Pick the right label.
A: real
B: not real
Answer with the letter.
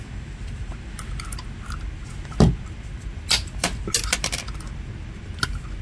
A